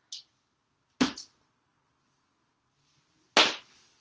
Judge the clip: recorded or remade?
recorded